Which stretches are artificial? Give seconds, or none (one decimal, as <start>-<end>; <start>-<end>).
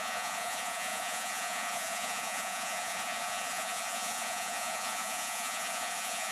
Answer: 0.0-6.3